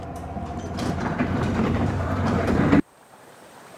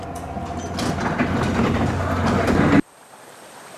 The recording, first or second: second